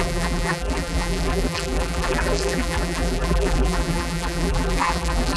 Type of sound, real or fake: fake